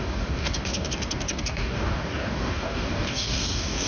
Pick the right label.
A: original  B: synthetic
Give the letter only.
B